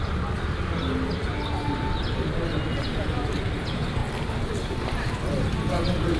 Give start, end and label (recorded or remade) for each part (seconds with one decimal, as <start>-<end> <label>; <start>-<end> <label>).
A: 0.0-6.2 recorded